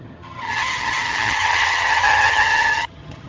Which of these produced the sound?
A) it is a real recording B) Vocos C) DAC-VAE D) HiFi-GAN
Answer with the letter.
D